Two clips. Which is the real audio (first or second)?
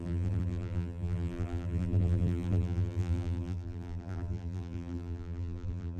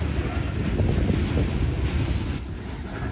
second